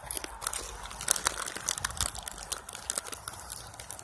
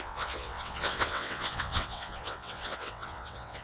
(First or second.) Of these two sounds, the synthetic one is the second